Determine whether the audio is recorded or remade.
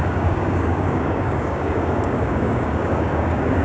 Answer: remade